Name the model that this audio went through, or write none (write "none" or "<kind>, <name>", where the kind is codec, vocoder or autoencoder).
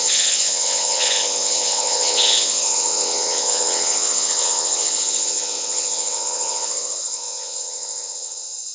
vocoder, WaveNeXt